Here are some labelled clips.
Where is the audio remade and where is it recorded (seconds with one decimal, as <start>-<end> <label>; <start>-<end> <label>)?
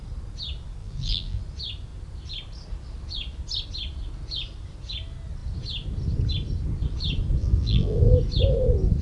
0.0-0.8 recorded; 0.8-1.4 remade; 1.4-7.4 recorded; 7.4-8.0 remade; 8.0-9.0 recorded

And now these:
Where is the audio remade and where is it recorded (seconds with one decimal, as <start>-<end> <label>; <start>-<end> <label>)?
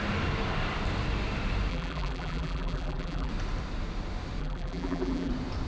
0.0-1.7 recorded; 1.7-3.3 remade; 3.3-4.4 recorded; 4.4-5.3 remade; 5.3-5.7 recorded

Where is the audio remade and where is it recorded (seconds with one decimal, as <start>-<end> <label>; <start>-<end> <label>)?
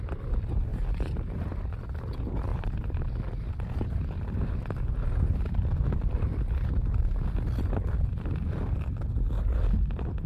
0.0-0.7 recorded; 0.7-1.4 remade; 1.4-2.5 recorded; 2.5-3.0 remade; 3.0-10.3 recorded